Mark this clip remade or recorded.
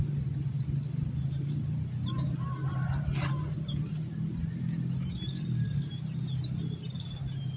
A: recorded